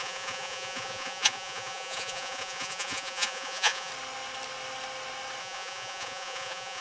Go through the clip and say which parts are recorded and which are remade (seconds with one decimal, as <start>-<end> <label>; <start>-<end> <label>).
0.0-3.9 remade; 3.9-5.4 recorded; 5.4-6.8 remade